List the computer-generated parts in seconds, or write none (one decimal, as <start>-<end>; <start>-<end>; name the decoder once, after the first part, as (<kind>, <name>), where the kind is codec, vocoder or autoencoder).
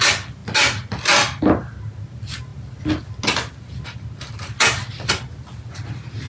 none